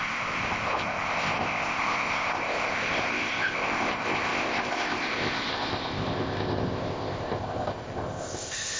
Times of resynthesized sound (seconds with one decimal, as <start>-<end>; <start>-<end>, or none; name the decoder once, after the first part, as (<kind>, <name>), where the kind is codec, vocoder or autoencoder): 0.0-8.8 (codec, ZipCodec)